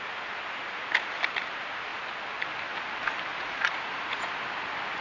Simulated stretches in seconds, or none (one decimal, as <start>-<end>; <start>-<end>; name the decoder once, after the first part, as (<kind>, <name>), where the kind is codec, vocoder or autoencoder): 3.3-4.4 (vocoder, Vocos)